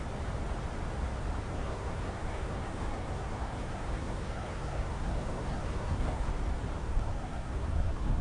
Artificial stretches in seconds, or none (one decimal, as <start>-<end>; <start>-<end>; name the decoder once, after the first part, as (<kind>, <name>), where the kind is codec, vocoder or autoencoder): 1.4-6.3 (codec, SNAC); 6.8-8.2

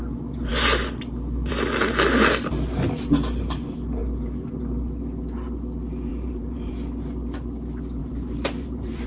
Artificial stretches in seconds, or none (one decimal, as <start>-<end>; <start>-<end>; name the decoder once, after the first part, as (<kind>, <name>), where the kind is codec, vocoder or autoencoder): 4.0-4.6 (vocoder, BigVGAN v2); 6.1-6.7; 8.0-9.1

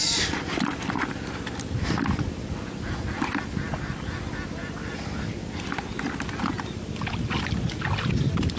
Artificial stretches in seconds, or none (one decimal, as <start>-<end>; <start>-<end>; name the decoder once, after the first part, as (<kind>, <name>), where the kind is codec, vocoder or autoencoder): none

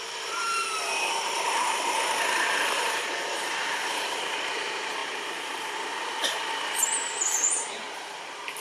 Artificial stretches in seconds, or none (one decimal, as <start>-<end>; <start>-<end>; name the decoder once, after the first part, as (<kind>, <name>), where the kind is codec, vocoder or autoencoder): 0.0-8.6 (vocoder, BigVGAN v2)

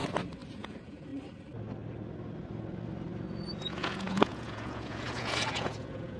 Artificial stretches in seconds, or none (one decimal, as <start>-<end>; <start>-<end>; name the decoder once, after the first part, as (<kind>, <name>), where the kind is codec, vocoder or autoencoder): 0.5-1.1 (vocoder, Vocos); 3.6-6.2